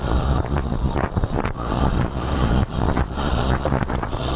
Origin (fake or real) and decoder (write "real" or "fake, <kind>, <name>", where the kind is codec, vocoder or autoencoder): fake, vocoder, Vocos